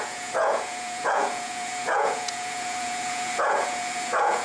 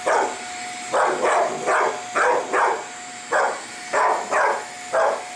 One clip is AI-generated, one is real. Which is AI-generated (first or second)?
first